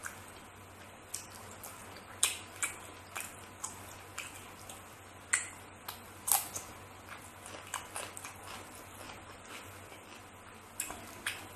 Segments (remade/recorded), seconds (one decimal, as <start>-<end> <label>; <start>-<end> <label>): 0.0-11.6 recorded